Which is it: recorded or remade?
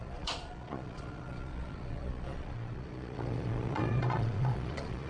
remade